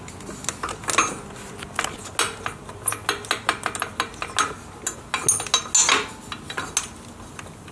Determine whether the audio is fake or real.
real